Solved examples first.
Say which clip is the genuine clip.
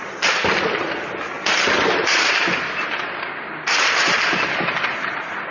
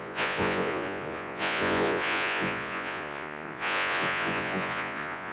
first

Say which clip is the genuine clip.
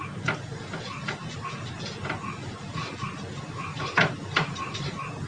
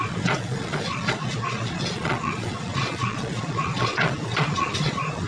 first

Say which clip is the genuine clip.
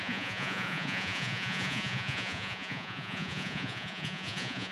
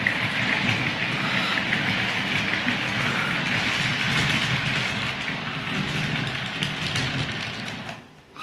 second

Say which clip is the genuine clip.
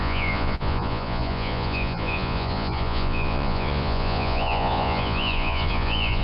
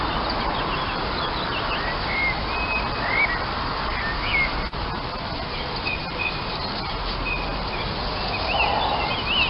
second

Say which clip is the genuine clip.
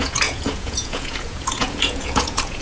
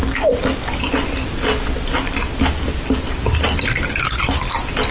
second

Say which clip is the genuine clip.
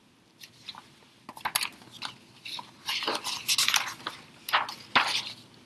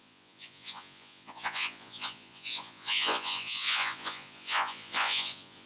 first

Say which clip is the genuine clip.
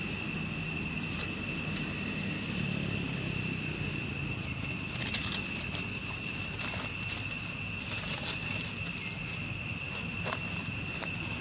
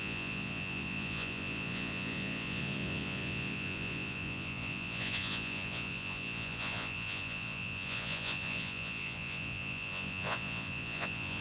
first